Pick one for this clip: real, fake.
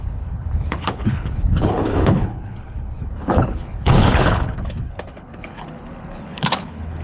fake